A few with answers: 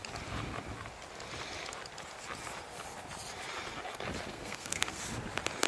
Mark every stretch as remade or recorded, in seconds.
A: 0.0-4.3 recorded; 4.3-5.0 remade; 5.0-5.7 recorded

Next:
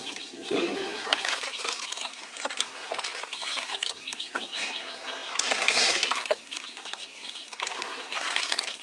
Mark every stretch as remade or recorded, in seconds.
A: 0.0-8.8 remade

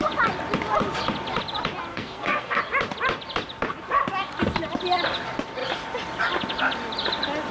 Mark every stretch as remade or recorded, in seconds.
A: 0.0-1.9 recorded; 1.9-2.6 remade; 2.6-7.5 recorded

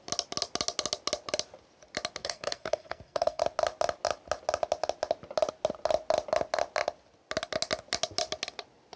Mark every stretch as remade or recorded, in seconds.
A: 0.0-2.2 recorded; 2.2-3.4 remade; 3.4-9.0 recorded

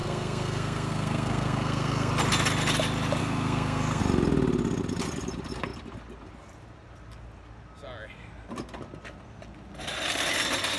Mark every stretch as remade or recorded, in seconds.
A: 0.0-2.1 remade; 2.1-3.2 recorded; 3.2-4.0 remade; 4.0-10.8 recorded

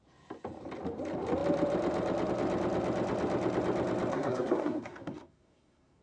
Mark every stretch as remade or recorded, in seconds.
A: 0.0-4.1 recorded; 4.1-6.0 remade

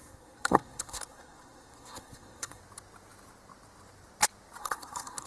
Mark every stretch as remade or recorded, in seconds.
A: 0.0-2.6 remade; 2.6-4.6 recorded; 4.6-5.3 remade